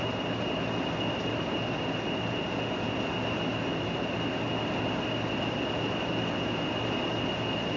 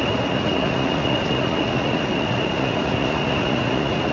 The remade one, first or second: second